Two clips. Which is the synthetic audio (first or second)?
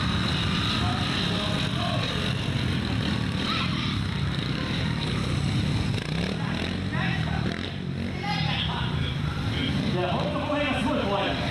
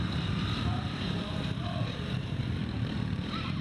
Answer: second